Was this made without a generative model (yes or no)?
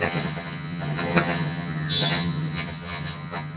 no